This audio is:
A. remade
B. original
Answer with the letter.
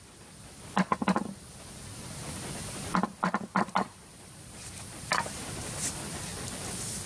B